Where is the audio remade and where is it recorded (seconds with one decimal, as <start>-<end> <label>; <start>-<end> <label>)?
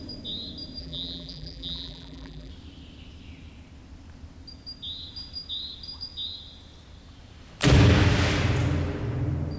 0.0-0.8 recorded; 0.8-2.5 remade; 2.5-9.6 recorded